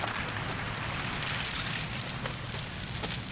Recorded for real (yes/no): yes